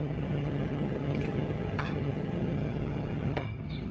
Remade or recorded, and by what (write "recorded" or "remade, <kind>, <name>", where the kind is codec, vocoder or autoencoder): remade, vocoder, HiFi-GAN